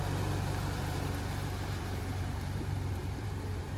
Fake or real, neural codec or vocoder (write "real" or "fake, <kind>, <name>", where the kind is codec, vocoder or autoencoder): fake, vocoder, BigVGAN v2